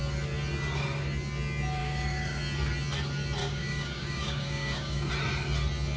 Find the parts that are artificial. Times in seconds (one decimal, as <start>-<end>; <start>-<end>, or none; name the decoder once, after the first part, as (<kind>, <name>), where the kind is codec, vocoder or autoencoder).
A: 1.8-2.4 (codec, DAC); 3.4-5.1